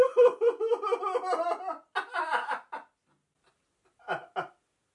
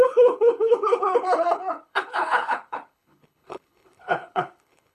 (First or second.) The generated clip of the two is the second